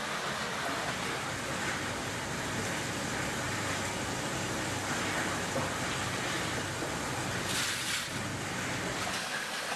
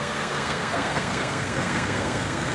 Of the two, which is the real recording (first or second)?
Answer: first